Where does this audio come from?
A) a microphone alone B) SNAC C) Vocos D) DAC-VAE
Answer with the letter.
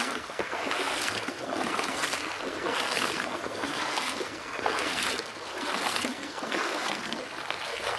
B